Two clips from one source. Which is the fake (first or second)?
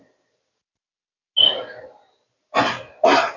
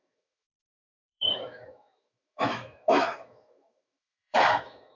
second